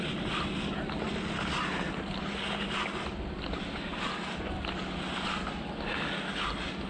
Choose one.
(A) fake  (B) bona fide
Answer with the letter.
B